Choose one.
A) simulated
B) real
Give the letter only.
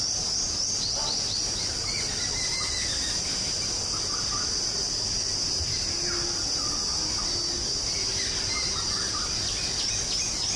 B